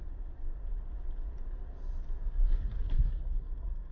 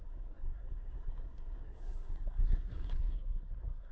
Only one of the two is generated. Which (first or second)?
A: second